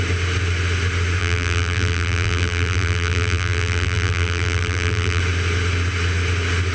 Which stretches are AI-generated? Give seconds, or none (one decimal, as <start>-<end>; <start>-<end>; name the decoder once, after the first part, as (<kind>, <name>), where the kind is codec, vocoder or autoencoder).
1.2-5.2 (vocoder, BigVGAN v2)